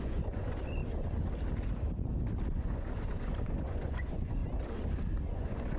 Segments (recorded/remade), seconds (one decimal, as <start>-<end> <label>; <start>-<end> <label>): 0.0-0.8 remade; 0.8-2.5 recorded; 2.5-4.4 remade; 4.4-5.2 recorded; 5.2-5.8 remade